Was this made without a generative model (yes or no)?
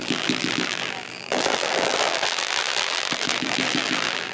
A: no